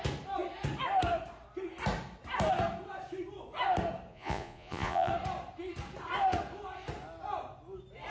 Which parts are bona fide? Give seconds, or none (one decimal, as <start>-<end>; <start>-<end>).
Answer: 0.0-4.1; 5.1-8.1